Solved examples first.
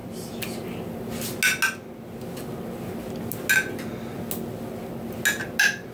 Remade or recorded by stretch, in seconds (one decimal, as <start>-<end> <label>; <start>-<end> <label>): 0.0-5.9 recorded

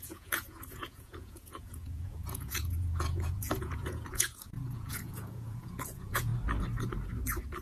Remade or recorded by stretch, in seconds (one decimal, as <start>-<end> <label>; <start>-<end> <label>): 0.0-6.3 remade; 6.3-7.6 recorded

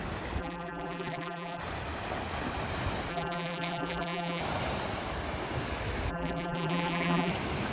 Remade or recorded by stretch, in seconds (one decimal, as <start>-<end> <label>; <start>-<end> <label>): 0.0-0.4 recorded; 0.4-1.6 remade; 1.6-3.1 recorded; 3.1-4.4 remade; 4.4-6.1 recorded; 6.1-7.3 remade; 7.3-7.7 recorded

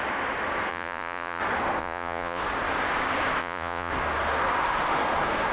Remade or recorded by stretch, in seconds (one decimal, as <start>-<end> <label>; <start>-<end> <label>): 0.0-0.7 recorded; 0.7-1.4 remade; 1.4-1.8 recorded; 1.8-2.4 remade; 2.4-3.4 recorded; 3.4-3.9 remade; 3.9-5.5 recorded

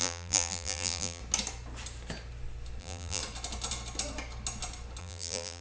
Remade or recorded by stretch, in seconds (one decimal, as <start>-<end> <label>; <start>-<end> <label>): 0.0-1.2 remade; 1.2-2.8 recorded; 2.8-3.2 remade; 3.2-5.0 recorded; 5.0-5.6 remade